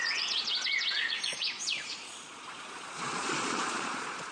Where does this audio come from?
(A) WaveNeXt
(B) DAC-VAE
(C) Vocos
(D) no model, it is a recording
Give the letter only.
C